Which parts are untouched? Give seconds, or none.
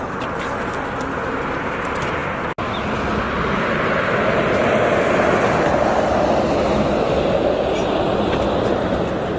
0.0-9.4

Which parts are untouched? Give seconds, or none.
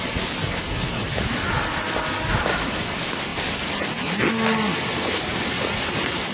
0.0-6.3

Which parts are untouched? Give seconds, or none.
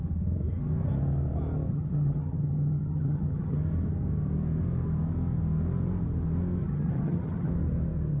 0.0-1.7; 3.6-6.6; 7.5-8.2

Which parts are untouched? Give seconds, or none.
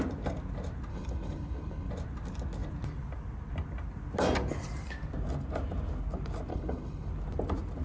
0.0-0.9; 1.9-6.5; 7.1-7.8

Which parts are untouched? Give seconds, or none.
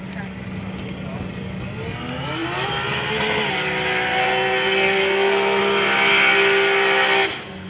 0.0-4.2; 5.6-7.7